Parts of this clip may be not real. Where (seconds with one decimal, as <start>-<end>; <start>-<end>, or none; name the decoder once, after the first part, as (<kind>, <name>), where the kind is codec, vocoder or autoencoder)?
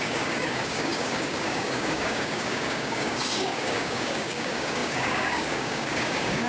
0.0-6.5 (codec, DAC)